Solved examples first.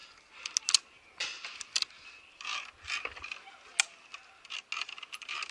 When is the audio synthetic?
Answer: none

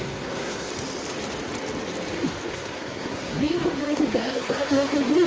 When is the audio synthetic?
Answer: 0.0-0.7 (codec, SNAC); 2.5-5.3

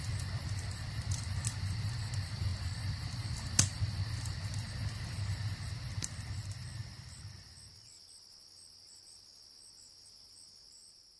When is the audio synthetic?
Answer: none

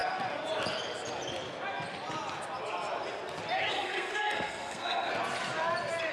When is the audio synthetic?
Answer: 3.7-5.1 (codec, SNAC)

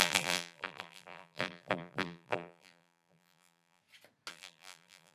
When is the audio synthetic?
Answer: 0.0-3.8 (vocoder, BigVGAN v2); 4.3-5.1

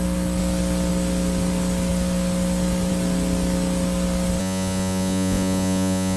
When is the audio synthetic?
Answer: 4.4-6.2 (vocoder, Vocos)

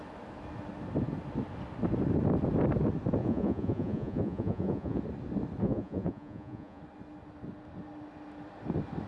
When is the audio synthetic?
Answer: 3.2-5.0 (vocoder, Vocos); 5.6-6.8

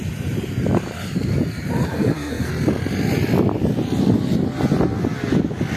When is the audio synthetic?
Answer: 1.9-2.5 (codec, SNAC)